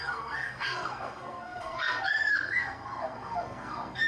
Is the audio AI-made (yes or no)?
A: yes